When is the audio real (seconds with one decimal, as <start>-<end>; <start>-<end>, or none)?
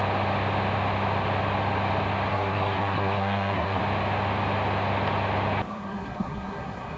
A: 0.0-2.3; 3.8-5.7